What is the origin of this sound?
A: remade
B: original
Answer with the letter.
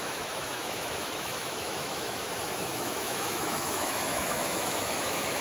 A